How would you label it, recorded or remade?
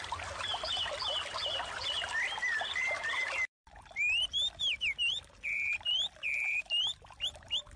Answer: remade